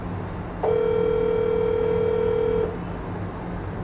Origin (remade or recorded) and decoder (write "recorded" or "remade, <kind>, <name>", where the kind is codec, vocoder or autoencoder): recorded